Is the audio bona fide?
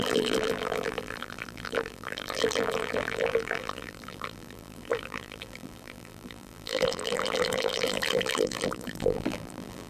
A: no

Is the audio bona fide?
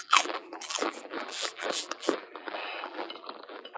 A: no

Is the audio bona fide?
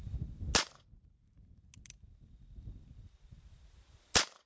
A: yes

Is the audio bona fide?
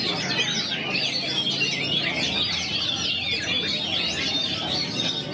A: yes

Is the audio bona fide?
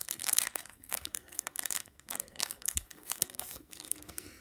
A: no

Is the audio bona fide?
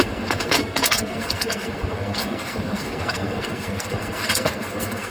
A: no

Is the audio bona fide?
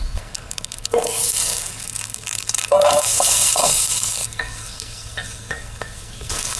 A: no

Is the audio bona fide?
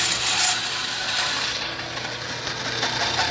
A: yes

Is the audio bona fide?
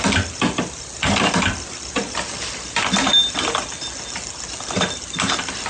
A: yes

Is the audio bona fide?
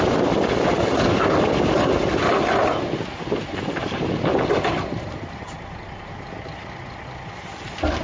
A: yes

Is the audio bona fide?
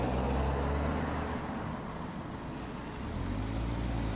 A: yes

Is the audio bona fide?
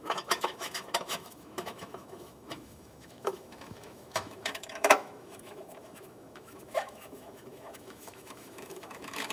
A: no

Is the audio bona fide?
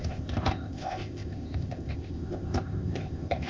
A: no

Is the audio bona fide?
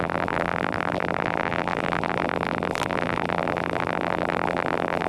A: no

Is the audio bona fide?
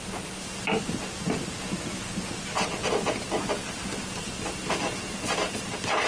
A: yes